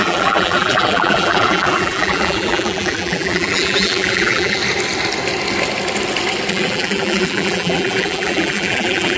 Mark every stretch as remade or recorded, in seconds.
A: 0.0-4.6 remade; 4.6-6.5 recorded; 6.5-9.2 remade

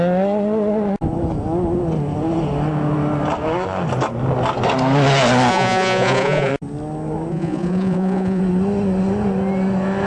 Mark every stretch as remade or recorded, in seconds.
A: 0.0-5.5 recorded; 5.5-6.5 remade; 6.5-7.3 recorded; 7.3-8.4 remade; 8.4-10.1 recorded

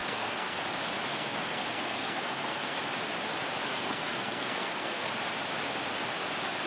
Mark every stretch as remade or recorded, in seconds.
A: 0.0-0.6 remade; 0.6-1.1 recorded; 1.1-2.8 remade; 2.8-3.7 recorded; 3.7-5.1 remade; 5.1-6.7 recorded

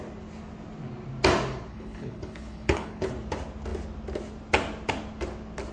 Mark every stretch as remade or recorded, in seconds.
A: 0.0-1.7 recorded; 1.7-3.1 remade; 3.1-5.7 recorded

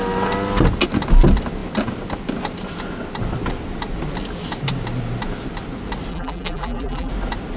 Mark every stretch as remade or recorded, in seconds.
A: 0.0-6.1 recorded; 6.1-7.1 remade; 7.1-7.6 recorded

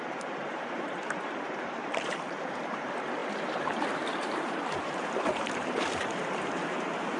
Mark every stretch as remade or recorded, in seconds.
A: 0.0-7.2 remade

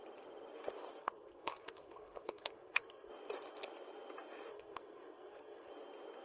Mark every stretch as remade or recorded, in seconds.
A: 0.0-1.0 recorded; 1.0-3.1 remade; 3.1-4.5 recorded; 4.5-5.7 remade; 5.7-6.2 recorded